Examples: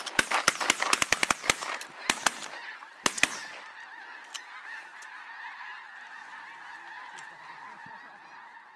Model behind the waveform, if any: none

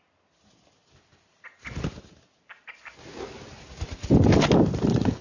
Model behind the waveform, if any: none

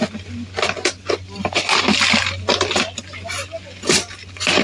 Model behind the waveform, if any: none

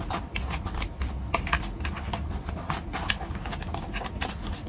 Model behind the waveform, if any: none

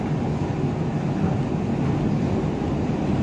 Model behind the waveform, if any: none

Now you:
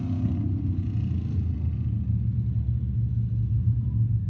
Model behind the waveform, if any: none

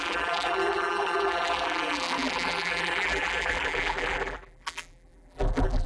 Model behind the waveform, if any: vocoder, BigVGAN v2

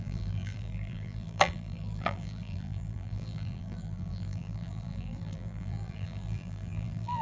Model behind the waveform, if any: vocoder, BigVGAN v2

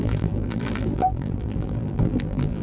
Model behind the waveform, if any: vocoder, BigVGAN v2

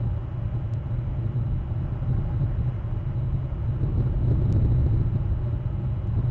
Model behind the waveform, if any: none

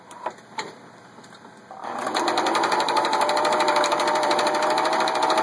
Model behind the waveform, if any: vocoder, BigVGAN v2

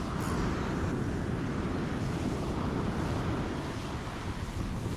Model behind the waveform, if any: none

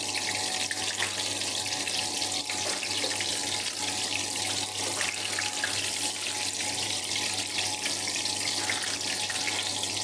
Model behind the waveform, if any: none